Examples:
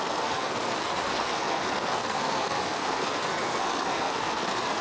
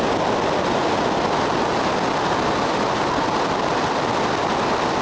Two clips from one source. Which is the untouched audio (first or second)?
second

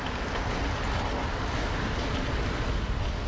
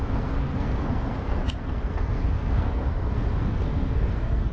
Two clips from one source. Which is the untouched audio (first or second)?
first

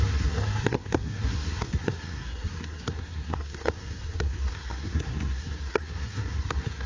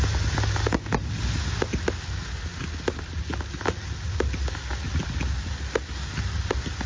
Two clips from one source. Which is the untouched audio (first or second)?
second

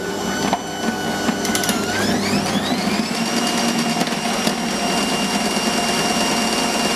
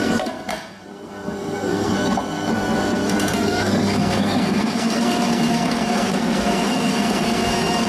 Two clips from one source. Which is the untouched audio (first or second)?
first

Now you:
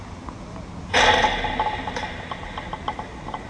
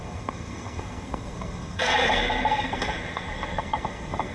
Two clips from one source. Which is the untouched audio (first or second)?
first